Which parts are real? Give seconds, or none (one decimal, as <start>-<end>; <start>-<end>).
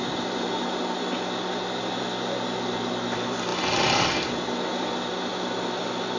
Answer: 0.0-6.2